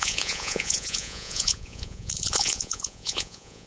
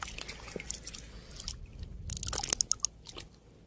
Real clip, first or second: second